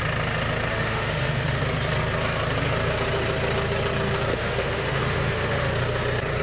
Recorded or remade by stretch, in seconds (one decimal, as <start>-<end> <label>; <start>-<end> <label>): 0.0-0.7 recorded; 0.7-1.6 remade; 1.6-4.3 recorded; 4.3-5.7 remade; 5.7-6.4 recorded